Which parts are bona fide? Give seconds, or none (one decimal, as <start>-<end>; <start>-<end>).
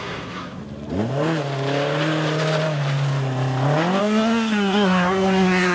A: 0.6-4.0